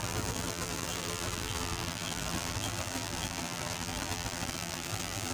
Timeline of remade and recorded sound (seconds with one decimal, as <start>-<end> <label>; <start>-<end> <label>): 0.0-5.3 remade